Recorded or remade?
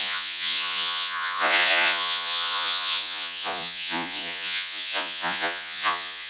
remade